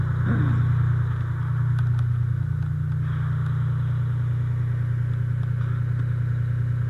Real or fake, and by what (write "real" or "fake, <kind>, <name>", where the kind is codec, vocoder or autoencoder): real